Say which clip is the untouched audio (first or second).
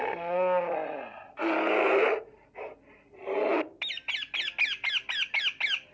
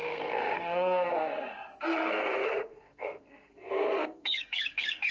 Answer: first